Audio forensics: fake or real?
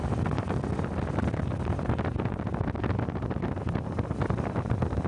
real